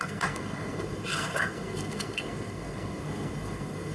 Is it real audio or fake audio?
fake